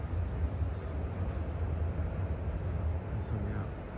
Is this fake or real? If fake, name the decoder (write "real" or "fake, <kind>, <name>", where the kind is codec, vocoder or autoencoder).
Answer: real